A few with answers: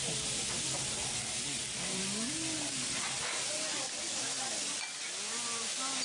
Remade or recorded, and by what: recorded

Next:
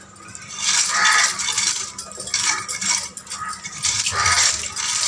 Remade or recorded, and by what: recorded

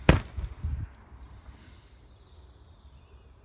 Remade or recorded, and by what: recorded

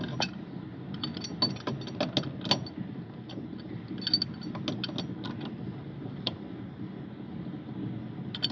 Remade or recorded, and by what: recorded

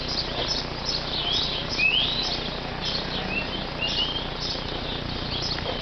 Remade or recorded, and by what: recorded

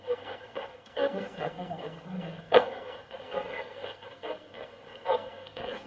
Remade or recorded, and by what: remade, codec, SNAC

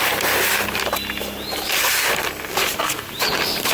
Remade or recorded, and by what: recorded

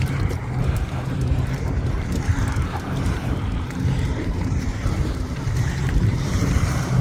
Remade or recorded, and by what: remade, vocoder, BigVGAN v2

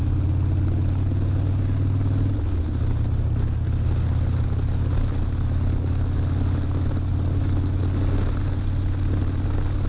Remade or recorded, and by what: recorded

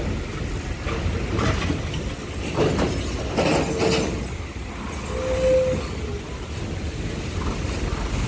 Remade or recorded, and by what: recorded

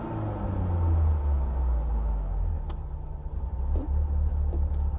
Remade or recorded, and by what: recorded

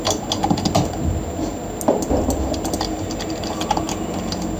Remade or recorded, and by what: recorded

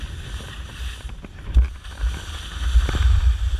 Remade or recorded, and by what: recorded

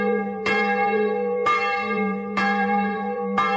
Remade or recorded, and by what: remade, vocoder, BigVGAN v2